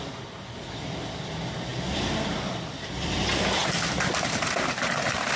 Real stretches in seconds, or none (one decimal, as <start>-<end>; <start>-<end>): 0.0-5.4